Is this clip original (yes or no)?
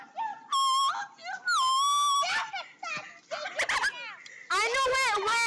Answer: yes